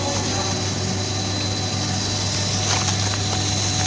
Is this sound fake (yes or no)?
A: no